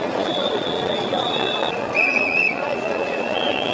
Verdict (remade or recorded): remade